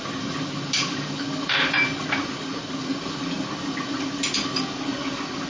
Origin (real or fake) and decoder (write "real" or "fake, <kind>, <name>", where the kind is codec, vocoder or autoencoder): real